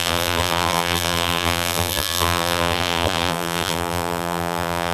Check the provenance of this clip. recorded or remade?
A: remade